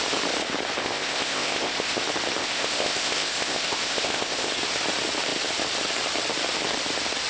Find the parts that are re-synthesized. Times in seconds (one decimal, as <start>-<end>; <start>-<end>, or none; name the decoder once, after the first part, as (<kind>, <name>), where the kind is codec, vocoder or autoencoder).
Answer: 0.8-2.0 (codec, ZipCodec); 2.4-4.5